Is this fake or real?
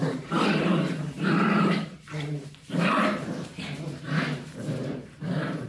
fake